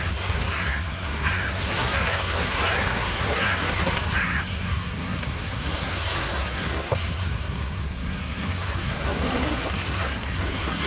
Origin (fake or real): fake